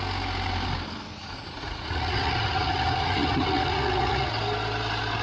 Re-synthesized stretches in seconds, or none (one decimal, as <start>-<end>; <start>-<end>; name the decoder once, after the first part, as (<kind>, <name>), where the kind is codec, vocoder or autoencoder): 1.2-4.3 (vocoder, Vocos)